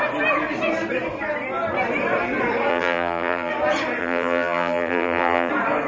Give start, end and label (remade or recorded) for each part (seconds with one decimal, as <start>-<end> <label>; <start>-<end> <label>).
0.0-2.7 recorded; 2.7-3.5 remade; 3.5-4.0 recorded; 4.0-5.5 remade; 5.5-5.9 recorded